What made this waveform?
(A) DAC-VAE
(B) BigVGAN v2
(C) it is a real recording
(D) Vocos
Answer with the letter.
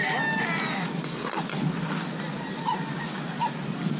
C